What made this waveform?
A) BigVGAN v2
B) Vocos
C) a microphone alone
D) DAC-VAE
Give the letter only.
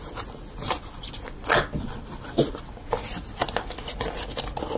C